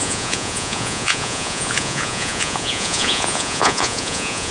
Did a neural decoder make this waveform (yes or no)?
yes